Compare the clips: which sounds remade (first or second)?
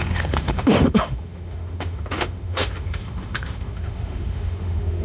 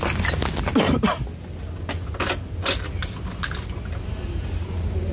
first